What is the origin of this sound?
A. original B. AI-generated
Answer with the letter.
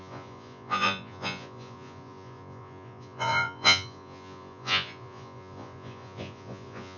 B